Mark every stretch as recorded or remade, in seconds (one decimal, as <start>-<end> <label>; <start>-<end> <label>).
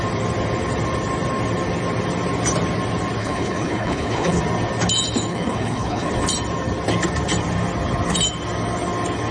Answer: 0.0-3.2 recorded; 3.2-4.4 remade; 4.4-5.3 recorded; 5.3-6.1 remade; 6.1-9.3 recorded